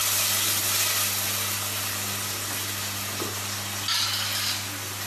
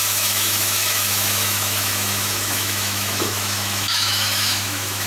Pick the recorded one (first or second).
first